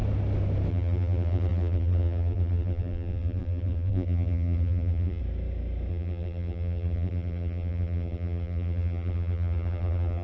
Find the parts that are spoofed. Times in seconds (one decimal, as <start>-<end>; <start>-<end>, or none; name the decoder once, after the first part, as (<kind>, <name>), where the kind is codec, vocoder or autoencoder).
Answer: 0.7-5.2 (vocoder, BigVGAN v2); 5.9-10.2